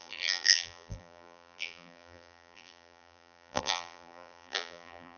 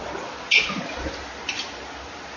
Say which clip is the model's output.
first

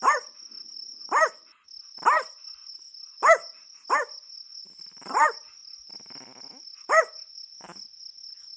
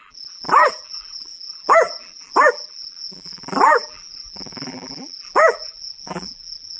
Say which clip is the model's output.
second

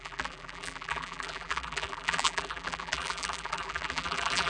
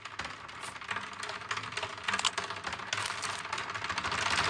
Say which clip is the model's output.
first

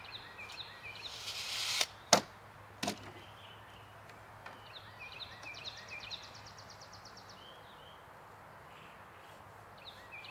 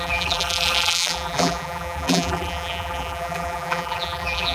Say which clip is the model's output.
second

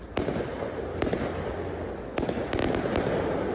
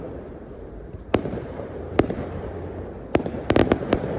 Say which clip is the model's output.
second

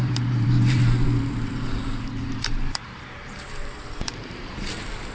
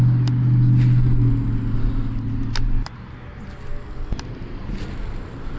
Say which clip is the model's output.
first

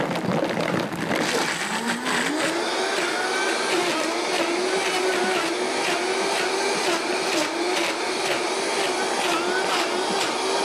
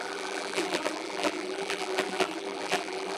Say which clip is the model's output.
second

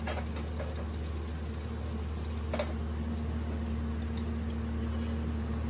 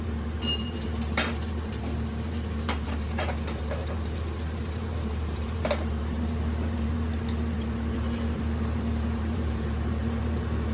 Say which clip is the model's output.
second